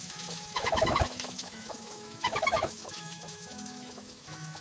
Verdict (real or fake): fake